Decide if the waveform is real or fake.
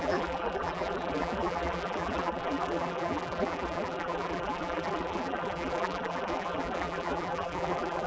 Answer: fake